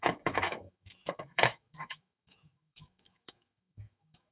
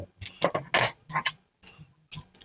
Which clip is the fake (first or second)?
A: first